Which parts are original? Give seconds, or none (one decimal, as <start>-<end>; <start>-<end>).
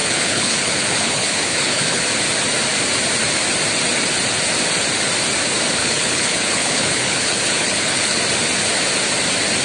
2.0-5.8; 8.2-9.6